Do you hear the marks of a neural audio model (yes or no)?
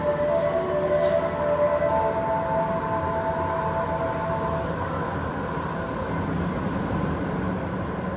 no